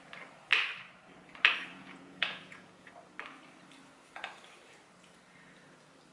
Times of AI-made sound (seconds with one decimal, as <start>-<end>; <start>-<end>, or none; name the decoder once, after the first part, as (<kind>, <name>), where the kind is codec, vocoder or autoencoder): 1.7-2.9 (vocoder, Vocos)